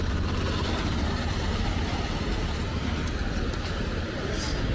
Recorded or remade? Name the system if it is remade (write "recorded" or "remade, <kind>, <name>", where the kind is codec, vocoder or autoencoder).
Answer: recorded